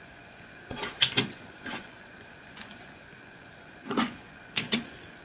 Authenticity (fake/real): fake